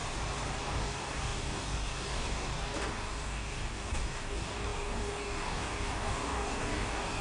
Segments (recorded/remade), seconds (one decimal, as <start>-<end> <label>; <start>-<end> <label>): 0.0-0.6 recorded; 0.6-7.2 remade